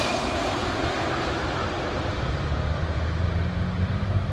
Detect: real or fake fake